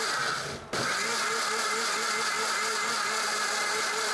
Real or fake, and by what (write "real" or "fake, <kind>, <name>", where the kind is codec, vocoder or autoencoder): real